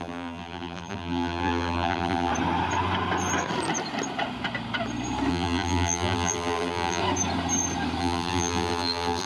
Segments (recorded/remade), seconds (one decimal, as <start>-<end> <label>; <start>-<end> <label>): 0.0-2.3 remade; 2.3-5.3 recorded; 5.3-7.0 remade; 7.0-8.0 recorded; 8.0-9.3 remade